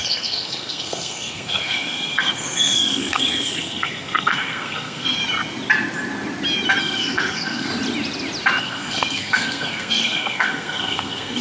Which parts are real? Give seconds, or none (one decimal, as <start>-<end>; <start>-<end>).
5.2-6.8; 7.7-8.6